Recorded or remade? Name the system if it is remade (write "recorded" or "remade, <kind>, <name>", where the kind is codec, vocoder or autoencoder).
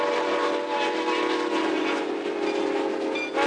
recorded